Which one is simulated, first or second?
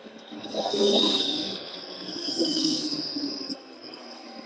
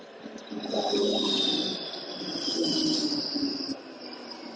first